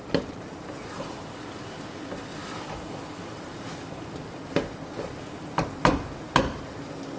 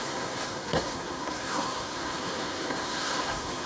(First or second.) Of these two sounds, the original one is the first